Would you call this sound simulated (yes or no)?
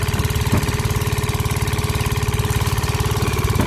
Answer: no